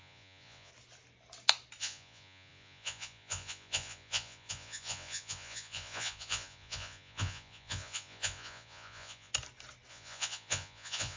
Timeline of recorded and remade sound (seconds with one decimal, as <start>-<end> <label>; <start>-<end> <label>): 0.0-0.7 remade; 0.7-1.8 recorded; 1.8-9.3 remade; 9.3-9.9 recorded; 9.9-11.2 remade